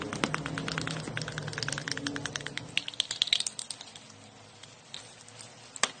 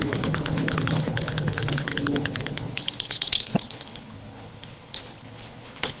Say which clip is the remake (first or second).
second